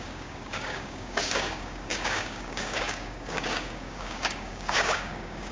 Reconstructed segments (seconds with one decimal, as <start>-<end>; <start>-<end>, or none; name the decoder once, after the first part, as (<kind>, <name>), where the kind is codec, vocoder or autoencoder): 0.0-5.5 (codec, DAC)

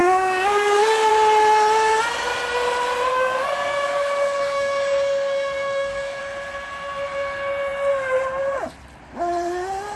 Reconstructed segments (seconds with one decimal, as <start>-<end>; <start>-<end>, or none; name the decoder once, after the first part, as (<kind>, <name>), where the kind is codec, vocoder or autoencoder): 0.0-1.1 (codec, DAC); 3.1-6.2

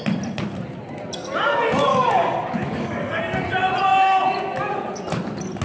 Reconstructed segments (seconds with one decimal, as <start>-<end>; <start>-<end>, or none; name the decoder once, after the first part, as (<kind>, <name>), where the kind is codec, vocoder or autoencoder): 1.9-3.2 (codec, DAC)